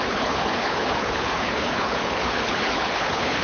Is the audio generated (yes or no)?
yes